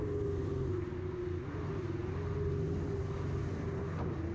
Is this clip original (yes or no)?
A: yes